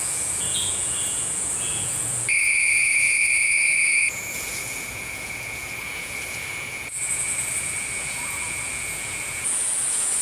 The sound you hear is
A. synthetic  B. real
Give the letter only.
A